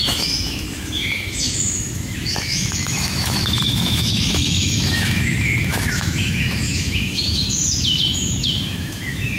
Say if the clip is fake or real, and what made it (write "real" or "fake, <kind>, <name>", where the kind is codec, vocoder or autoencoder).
fake, autoencoder, DAC-VAE